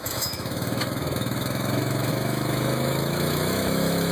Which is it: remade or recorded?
remade